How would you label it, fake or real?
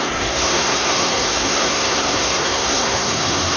fake